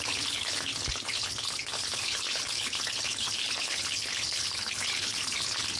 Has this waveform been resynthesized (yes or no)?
yes